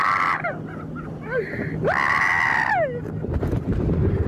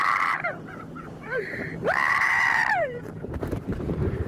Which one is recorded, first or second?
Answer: first